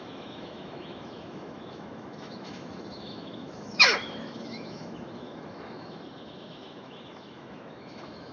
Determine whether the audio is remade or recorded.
remade